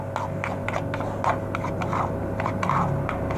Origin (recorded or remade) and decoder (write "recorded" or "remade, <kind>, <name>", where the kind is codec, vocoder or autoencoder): recorded